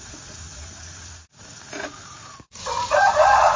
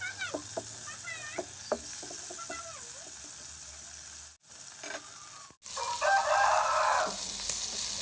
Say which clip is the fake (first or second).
first